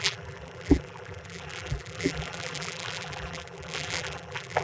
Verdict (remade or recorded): remade